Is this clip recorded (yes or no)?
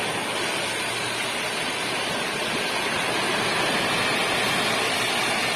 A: yes